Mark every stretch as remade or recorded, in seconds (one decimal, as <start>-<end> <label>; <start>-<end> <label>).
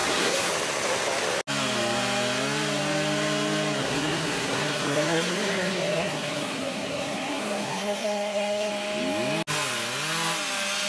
0.0-0.5 remade; 0.5-3.8 recorded; 3.8-8.7 remade; 8.7-10.9 recorded